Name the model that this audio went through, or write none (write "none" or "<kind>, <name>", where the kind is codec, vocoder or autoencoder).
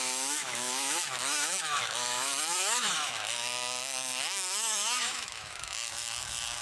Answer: autoencoder, DAC-VAE